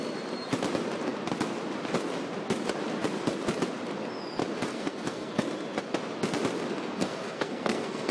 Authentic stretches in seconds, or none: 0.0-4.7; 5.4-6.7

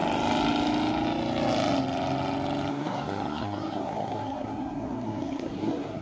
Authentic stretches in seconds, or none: 0.0-2.7

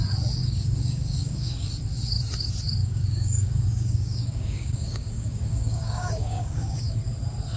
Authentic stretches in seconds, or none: 0.0-0.4; 1.7-2.8; 7.0-7.6

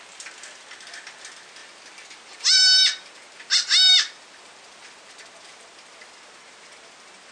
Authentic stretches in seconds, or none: 0.0-7.3

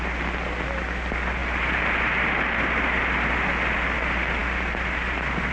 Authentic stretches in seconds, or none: 0.0-5.5

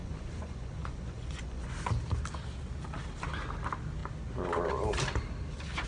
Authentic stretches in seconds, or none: 1.7-5.9

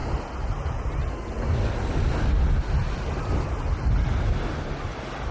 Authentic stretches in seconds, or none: 0.0-5.3

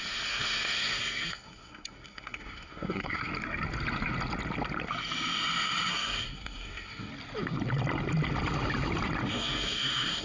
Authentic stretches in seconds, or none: 3.3-5.9; 7.1-9.3